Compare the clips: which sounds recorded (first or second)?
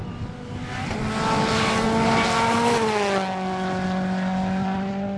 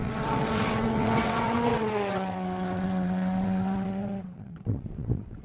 first